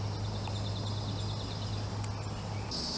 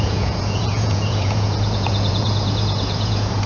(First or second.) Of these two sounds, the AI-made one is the second